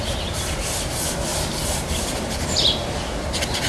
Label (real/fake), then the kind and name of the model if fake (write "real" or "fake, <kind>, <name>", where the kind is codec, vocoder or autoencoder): real